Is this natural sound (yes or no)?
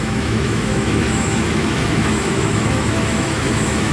no